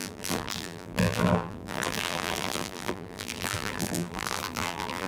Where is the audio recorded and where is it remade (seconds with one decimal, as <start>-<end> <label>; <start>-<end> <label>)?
0.0-5.1 remade